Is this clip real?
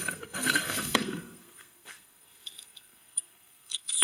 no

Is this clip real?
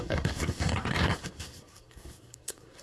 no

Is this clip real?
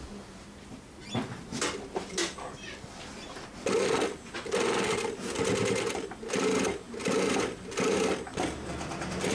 yes